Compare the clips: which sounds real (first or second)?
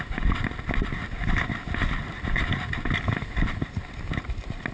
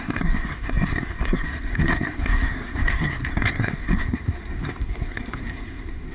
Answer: first